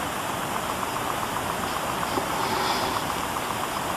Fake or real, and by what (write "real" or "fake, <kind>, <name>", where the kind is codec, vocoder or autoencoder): real